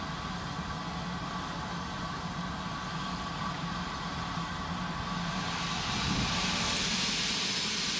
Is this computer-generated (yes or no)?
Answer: no